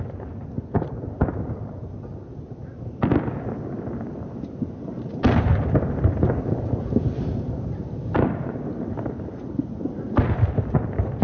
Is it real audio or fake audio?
real